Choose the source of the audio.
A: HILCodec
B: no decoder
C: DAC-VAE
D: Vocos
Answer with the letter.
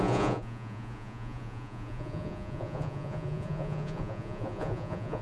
D